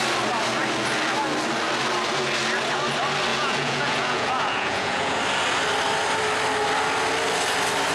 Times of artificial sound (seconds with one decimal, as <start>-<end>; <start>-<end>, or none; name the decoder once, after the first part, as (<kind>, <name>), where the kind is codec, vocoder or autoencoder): 3.3-5.2 (vocoder, Vocos)

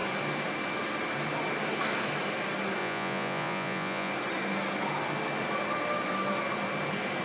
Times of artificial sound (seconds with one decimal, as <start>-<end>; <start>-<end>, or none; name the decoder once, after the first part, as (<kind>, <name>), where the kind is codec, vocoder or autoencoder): 2.8-4.1 (vocoder, Vocos)

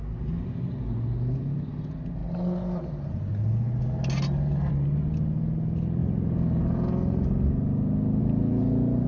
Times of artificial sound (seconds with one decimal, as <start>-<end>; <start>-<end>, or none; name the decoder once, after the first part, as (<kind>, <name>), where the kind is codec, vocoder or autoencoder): none

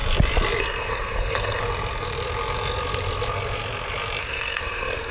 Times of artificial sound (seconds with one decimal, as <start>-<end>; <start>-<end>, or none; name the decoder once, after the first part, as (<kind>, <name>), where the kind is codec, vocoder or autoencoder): 0.6-1.6 (codec, SNAC); 4.2-5.1

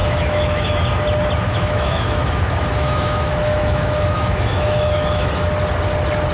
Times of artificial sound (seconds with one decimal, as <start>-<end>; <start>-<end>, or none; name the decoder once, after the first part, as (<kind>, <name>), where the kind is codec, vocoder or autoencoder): 0.0-0.7 (autoencoder, DAC-VAE); 1.5-5.3

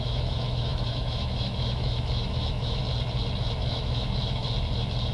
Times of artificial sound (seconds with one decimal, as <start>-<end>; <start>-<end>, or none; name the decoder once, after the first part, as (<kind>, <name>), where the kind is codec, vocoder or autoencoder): 0.0-2.8 (autoencoder, DAC-VAE); 3.4-4.4

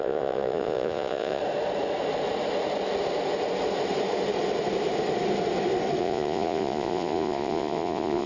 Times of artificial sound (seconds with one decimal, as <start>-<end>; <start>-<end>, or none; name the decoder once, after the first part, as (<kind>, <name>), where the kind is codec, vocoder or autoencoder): 0.0-1.4 (vocoder, Vocos); 6.0-8.3